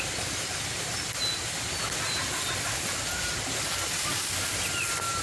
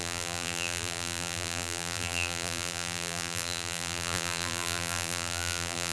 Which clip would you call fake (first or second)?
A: second